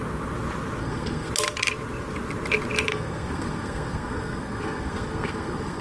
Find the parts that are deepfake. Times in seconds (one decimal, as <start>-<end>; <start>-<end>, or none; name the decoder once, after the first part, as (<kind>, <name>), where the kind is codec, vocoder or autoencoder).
0.8-1.3 (codec, SNAC); 2.9-5.8